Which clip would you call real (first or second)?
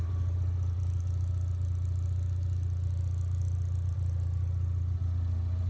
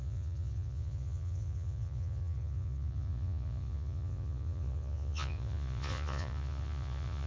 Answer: first